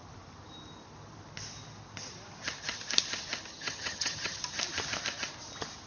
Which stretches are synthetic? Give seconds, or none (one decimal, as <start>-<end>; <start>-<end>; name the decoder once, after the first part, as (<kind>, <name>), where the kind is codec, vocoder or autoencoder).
3.5-4.4 (vocoder, HiFi-GAN)